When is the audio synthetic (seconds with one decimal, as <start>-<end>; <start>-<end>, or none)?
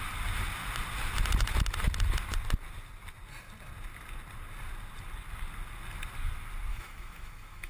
6.7-7.7